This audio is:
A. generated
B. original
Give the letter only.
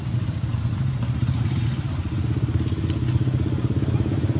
B